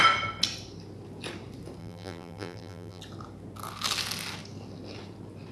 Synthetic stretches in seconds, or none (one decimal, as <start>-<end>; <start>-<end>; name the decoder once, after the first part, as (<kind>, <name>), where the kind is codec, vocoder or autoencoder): 1.8-3.0 (vocoder, BigVGAN v2)